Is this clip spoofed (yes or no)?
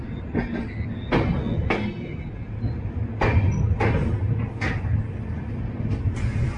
no